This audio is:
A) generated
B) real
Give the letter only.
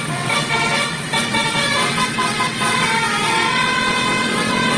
A